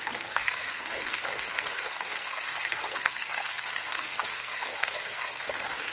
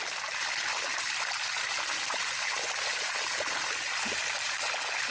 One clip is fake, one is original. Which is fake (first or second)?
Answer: first